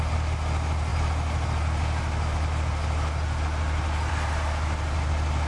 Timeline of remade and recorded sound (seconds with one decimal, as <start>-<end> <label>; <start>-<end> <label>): 0.0-5.5 recorded